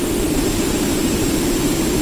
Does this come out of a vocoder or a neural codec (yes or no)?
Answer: no